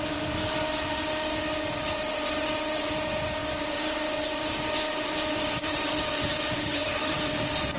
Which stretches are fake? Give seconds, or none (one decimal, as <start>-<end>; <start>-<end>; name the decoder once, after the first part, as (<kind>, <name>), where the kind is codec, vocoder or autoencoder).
6.6-7.1 (codec, HILCodec)